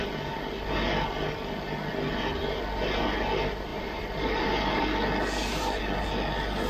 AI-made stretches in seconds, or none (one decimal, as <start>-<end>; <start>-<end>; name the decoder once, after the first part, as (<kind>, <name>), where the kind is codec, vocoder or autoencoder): 3.7-4.8 (vocoder, BigVGAN v2)